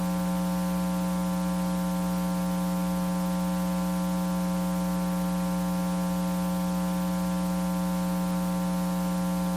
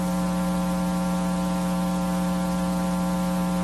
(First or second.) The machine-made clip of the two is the second